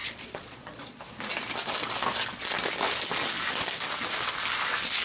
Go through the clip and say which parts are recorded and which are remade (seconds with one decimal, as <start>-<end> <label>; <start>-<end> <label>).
0.0-1.0 remade; 1.0-5.0 recorded